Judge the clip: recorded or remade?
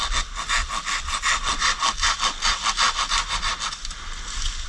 recorded